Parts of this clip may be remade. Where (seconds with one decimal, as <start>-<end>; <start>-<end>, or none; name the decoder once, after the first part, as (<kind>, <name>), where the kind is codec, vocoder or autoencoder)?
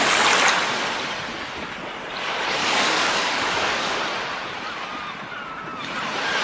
2.6-4.0 (codec, DAC)